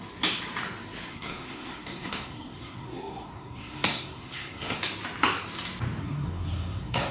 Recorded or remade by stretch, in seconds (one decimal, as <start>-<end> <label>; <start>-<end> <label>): 0.0-1.1 recorded; 1.1-4.8 remade; 4.8-6.0 recorded; 6.0-7.1 remade